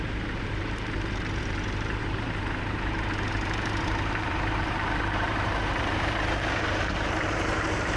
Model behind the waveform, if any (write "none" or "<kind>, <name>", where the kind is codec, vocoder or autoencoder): vocoder, BigVGAN v2